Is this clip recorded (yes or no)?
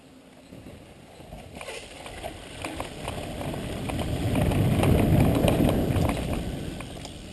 yes